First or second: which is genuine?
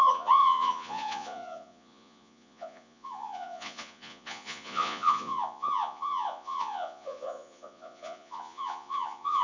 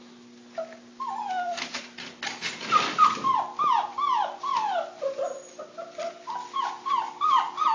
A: second